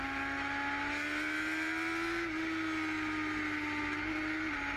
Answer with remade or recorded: recorded